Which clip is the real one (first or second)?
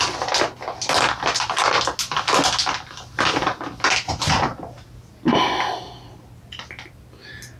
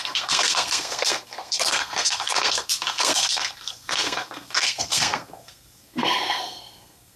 first